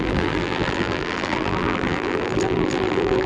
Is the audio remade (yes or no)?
yes